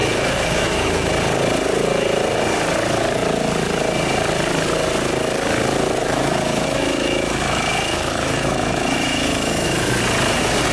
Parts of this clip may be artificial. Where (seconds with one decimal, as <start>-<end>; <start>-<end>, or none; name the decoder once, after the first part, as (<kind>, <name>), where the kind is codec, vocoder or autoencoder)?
0.0-1.1 (autoencoder, DAC-VAE); 6.0-10.0